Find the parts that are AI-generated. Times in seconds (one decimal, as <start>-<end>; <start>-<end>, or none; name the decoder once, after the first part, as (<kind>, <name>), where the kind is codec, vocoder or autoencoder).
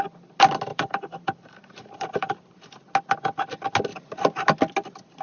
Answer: 0.7-2.8 (vocoder, BigVGAN v2)